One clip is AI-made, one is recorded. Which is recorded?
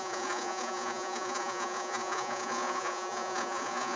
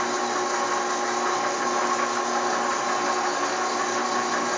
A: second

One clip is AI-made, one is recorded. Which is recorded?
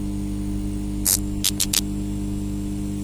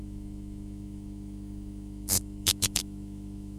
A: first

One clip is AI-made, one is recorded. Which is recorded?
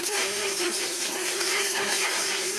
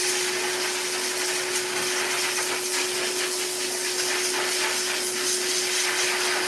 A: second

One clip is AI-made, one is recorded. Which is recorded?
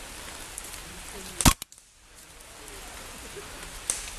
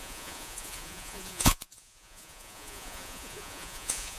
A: first